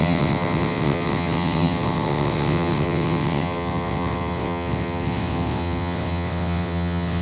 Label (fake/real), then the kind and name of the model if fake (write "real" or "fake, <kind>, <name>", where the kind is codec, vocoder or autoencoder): fake, vocoder, WaveNeXt